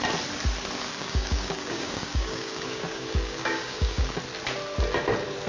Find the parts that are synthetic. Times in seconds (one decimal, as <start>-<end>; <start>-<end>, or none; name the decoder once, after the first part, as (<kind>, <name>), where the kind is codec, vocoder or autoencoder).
0.9-4.2 (codec, DAC)